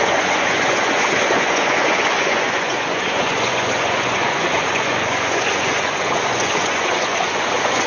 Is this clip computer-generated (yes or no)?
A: yes